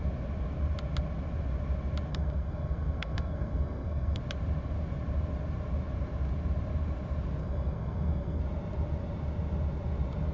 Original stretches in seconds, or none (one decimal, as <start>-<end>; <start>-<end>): 0.0-2.1; 4.2-7.4; 8.4-10.3